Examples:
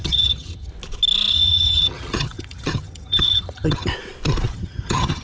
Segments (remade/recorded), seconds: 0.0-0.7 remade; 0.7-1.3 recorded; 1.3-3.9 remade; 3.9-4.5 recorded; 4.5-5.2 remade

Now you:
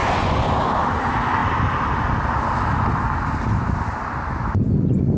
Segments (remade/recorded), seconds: 0.0-0.6 remade; 0.6-5.2 recorded

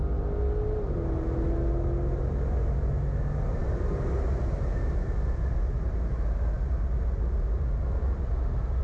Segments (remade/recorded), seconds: 0.0-8.8 recorded

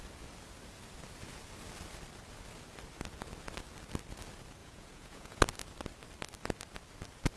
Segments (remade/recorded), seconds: 0.0-4.6 recorded; 4.6-5.4 remade; 5.4-7.4 recorded

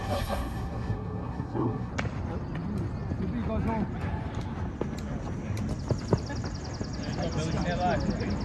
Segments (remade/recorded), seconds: 0.0-1.9 remade; 1.9-8.4 recorded

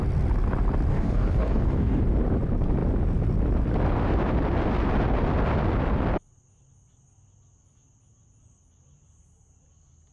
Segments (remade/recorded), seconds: 0.0-0.9 recorded; 0.9-2.0 remade; 2.0-10.1 recorded

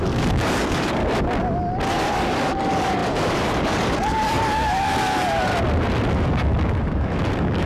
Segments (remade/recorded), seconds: 0.0-1.0 remade; 1.0-1.9 recorded; 1.9-5.5 remade; 5.5-6.1 recorded; 6.1-7.7 remade

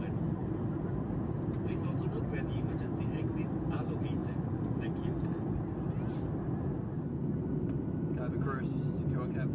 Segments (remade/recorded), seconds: 0.0-9.5 recorded